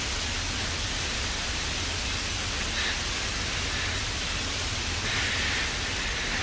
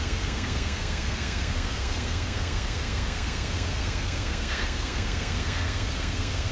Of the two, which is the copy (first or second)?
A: second